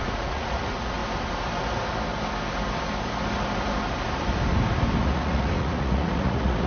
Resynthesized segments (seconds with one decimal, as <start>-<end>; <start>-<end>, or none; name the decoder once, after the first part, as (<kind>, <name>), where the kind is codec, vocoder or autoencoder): 0.0-1.0 (vocoder, Vocos); 5.0-6.7